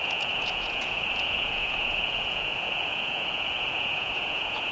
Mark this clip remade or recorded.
remade